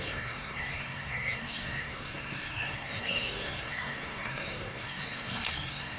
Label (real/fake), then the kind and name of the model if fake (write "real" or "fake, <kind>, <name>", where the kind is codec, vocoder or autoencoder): fake, codec, SNAC